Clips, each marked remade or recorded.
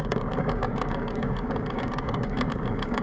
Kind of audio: remade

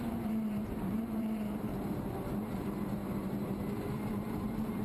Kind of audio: remade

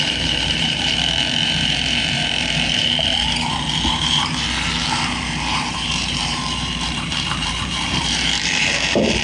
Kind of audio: remade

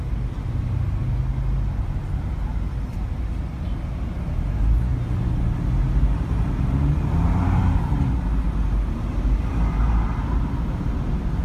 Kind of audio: recorded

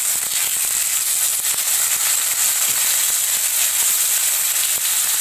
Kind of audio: recorded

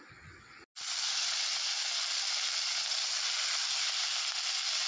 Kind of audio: recorded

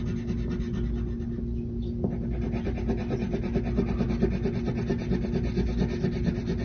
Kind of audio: recorded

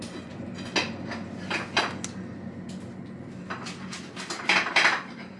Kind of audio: recorded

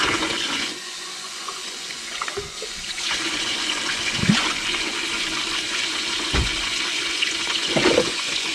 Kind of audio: remade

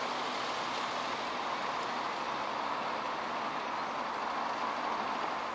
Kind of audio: recorded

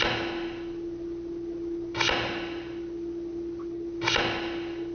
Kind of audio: recorded